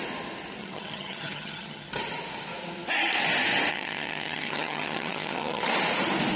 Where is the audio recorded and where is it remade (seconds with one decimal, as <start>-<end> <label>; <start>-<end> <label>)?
0.0-0.6 recorded; 0.6-1.9 remade; 1.9-3.7 recorded; 3.7-5.6 remade; 5.6-6.4 recorded